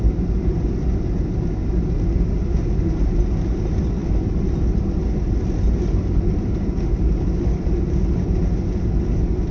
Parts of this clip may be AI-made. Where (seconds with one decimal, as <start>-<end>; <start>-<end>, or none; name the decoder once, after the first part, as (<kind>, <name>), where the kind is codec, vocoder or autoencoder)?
none